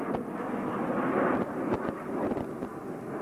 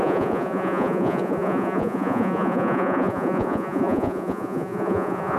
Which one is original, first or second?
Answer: first